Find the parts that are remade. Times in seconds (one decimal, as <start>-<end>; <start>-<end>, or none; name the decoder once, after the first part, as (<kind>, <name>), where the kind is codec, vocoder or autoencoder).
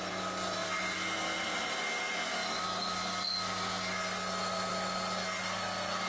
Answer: none